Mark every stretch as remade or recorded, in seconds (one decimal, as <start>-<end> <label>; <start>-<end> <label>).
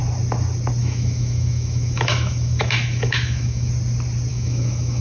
0.0-0.8 recorded; 0.8-3.7 remade; 3.7-4.3 recorded; 4.3-5.0 remade